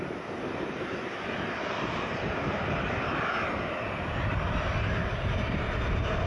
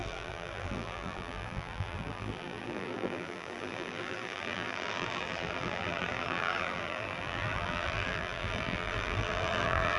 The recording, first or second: first